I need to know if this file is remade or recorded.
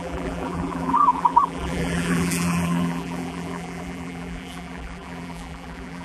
remade